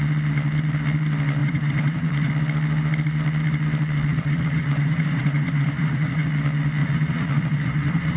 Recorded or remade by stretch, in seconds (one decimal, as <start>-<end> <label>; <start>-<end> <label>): 0.0-1.4 recorded; 1.4-2.3 remade; 2.3-4.1 recorded; 4.1-6.3 remade; 6.3-6.8 recorded; 6.8-8.2 remade